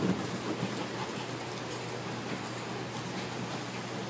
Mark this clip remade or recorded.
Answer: recorded